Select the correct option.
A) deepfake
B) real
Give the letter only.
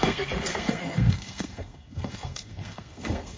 A